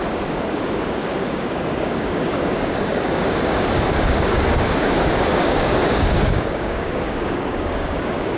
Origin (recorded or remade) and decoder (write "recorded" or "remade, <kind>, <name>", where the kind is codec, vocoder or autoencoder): remade, codec, DAC